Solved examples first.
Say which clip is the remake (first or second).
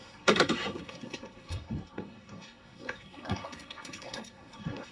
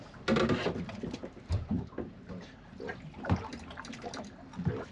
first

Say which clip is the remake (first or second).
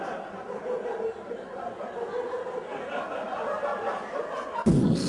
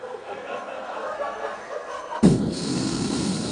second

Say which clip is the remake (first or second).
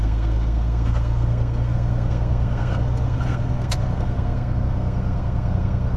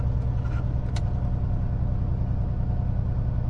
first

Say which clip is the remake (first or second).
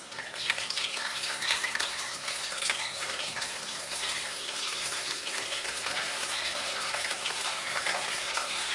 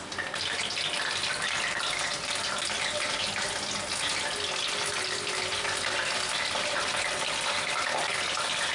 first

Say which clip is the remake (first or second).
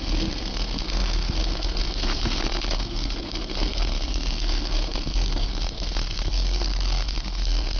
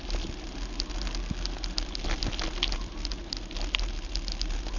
first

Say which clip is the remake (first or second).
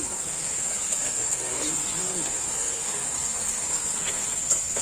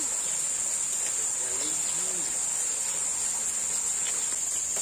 first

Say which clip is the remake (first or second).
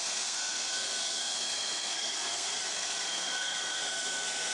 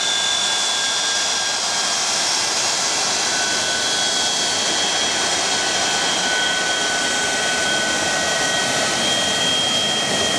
first